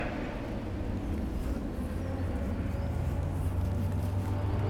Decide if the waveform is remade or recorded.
recorded